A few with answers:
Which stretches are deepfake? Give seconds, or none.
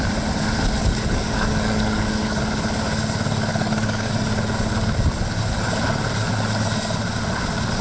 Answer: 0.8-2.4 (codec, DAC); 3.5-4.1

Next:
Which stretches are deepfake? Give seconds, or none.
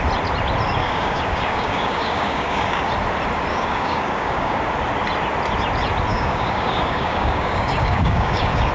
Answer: 0.8-2.9 (codec, DAC); 3.5-4.6; 6.1-8.7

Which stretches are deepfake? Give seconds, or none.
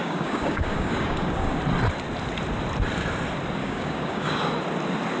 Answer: 0.0-1.6 (codec, DAC); 3.6-4.5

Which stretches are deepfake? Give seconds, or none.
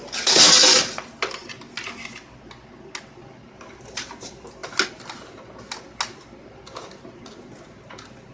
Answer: none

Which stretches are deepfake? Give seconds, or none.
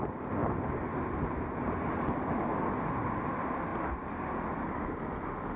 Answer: none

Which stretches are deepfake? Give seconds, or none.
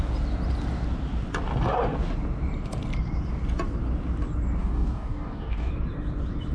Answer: 4.6-5.7 (codec, DAC)